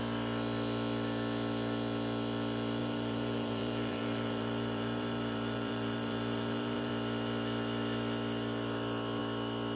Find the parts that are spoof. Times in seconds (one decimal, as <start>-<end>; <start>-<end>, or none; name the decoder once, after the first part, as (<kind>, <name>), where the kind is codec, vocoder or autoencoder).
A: 2.8-6.9 (vocoder, BigVGAN v2)